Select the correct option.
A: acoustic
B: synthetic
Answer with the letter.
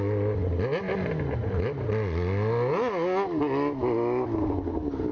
A